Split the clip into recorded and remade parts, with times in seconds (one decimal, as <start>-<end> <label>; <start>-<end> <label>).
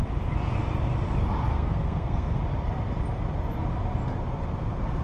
0.0-1.5 recorded; 1.5-2.4 remade; 2.4-5.0 recorded